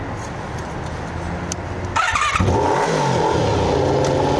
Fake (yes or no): no